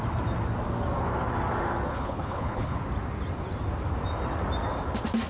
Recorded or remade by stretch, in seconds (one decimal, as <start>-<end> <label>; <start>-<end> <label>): 0.0-1.9 recorded; 1.9-2.8 remade; 2.8-5.3 recorded